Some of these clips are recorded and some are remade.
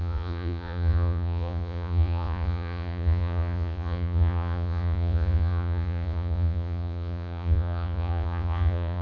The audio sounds remade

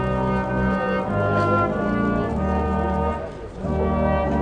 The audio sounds recorded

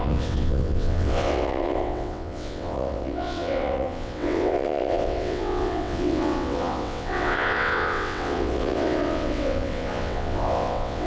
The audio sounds remade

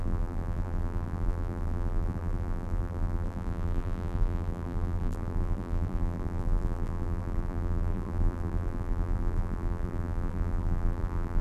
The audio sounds remade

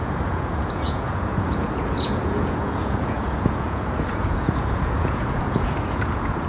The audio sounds remade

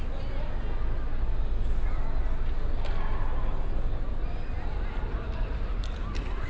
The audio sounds recorded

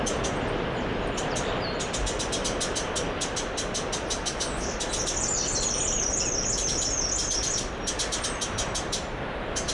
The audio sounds recorded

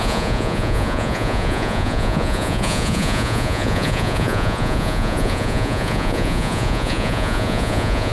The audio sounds remade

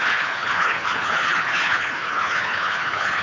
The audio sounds remade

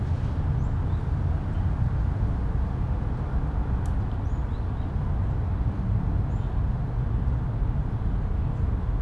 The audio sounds recorded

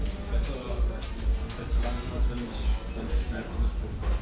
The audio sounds recorded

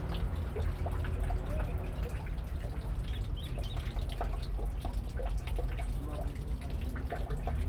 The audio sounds recorded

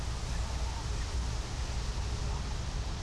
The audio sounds recorded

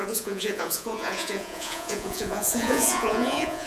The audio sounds remade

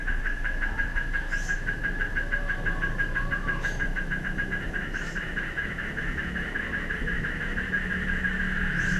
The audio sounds remade